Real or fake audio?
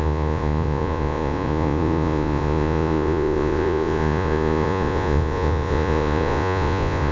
fake